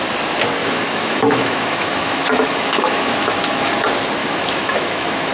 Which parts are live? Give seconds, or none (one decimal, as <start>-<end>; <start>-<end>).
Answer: 0.0-0.6; 3.7-4.2